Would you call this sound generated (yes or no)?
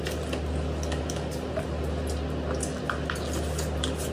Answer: no